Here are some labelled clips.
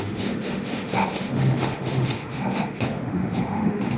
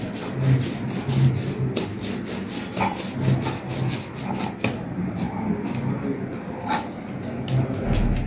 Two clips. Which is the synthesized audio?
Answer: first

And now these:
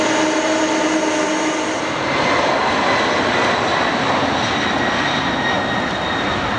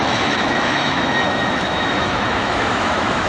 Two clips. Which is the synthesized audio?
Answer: second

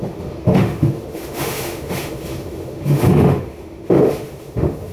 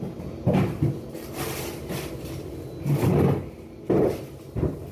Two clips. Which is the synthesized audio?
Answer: first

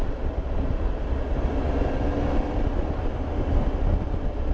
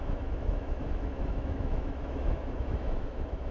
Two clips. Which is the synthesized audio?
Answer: second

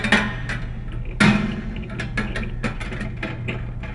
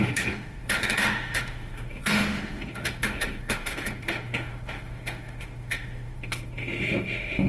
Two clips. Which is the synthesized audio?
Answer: second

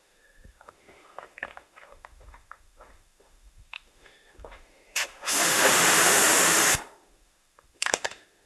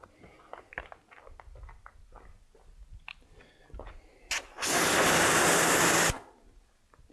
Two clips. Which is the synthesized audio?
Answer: first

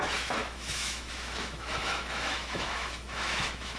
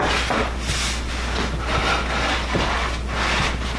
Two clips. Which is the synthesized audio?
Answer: first